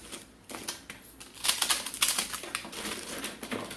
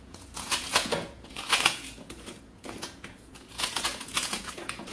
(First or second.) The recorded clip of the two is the first